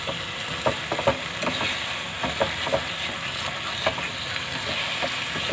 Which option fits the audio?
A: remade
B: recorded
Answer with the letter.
B